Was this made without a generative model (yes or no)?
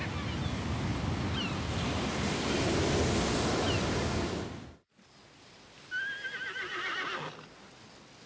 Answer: yes